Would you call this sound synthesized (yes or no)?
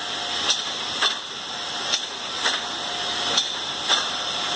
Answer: no